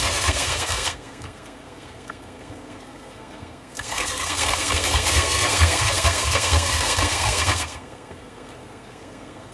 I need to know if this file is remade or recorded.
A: remade